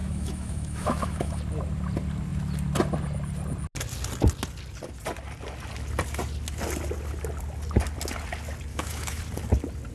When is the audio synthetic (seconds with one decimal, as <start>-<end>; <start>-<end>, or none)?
0.0-1.4; 8.7-9.2